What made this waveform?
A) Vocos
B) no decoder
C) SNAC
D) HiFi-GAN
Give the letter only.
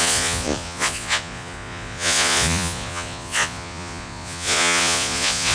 A